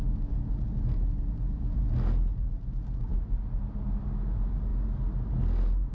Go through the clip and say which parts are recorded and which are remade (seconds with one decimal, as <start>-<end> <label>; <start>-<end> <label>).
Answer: 0.0-5.9 recorded